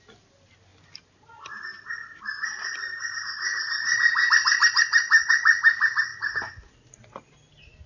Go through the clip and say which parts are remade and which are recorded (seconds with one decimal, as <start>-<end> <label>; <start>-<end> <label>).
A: 0.0-0.7 recorded; 0.7-5.3 remade; 5.3-7.9 recorded

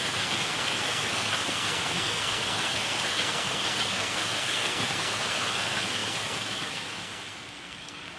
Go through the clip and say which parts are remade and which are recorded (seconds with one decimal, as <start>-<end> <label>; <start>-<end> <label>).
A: 0.0-8.2 remade

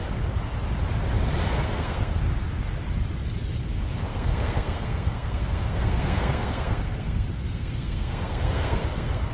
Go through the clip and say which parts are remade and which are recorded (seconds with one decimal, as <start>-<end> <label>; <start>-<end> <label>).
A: 0.0-1.6 recorded; 1.6-2.2 remade; 2.2-4.1 recorded; 4.1-9.3 remade

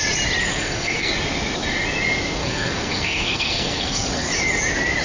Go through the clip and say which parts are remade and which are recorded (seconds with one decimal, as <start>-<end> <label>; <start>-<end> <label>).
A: 0.0-0.5 recorded; 0.5-1.1 remade; 1.1-2.4 recorded; 2.4-4.3 remade; 4.3-5.0 recorded

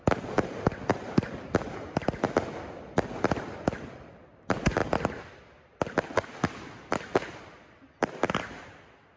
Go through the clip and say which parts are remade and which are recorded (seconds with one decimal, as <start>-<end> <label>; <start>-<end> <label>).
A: 0.0-9.2 recorded

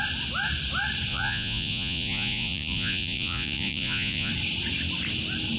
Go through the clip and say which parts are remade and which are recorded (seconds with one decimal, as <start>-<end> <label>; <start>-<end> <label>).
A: 0.0-1.1 recorded; 1.1-4.3 remade; 4.3-5.6 recorded